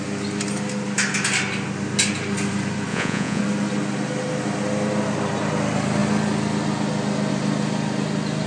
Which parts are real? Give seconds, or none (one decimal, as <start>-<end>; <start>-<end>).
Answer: 0.0-2.9; 3.4-8.5